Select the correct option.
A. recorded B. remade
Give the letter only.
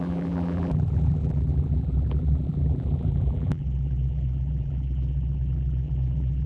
B